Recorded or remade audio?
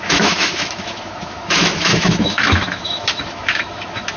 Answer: remade